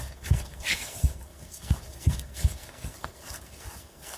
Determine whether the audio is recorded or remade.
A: remade